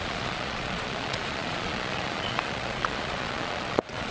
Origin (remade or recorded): remade